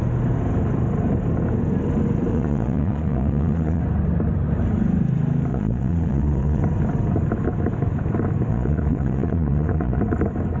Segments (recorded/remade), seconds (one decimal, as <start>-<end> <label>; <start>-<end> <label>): 0.0-2.3 recorded; 2.3-3.8 remade; 3.8-5.5 recorded; 5.5-6.6 remade; 6.6-8.5 recorded; 8.5-10.0 remade; 10.0-10.6 recorded

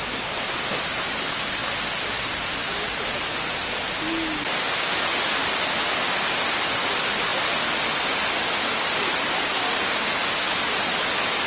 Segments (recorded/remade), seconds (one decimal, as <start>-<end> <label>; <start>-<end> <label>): 0.0-11.5 recorded

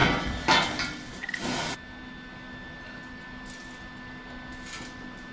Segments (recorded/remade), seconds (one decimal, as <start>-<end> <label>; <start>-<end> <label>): 0.0-5.3 recorded

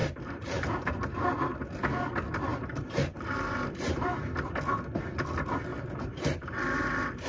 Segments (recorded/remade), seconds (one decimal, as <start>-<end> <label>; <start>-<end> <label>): 0.0-0.7 remade; 0.7-2.5 recorded; 2.5-4.1 remade; 4.1-5.7 recorded; 5.7-7.3 remade

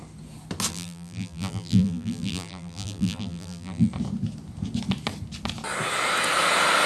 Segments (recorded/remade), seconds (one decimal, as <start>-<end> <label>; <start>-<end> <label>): 0.0-0.7 recorded; 0.7-3.9 remade; 3.9-6.9 recorded

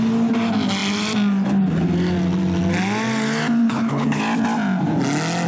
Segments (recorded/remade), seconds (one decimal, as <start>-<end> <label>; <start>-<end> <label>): 0.0-3.6 recorded; 3.6-4.2 remade; 4.2-5.5 recorded

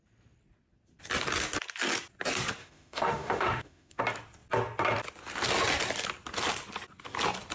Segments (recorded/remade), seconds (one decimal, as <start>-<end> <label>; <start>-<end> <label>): 0.0-2.6 recorded; 2.6-4.0 remade; 4.0-7.5 recorded